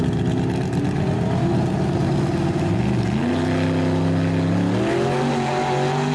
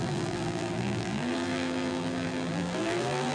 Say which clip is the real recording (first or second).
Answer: first